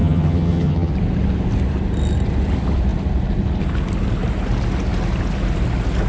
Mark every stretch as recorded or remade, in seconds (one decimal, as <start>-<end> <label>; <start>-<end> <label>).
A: 0.0-0.9 remade; 0.9-6.1 recorded